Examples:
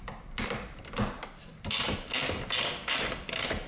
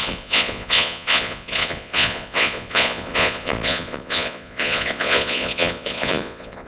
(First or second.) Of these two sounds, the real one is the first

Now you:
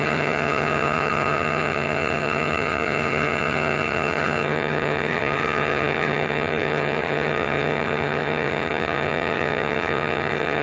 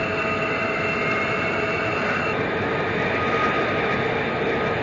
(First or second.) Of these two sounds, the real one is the second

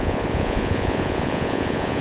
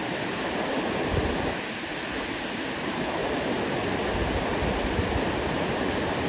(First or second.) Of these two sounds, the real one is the second